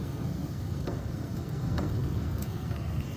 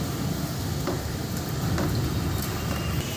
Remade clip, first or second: first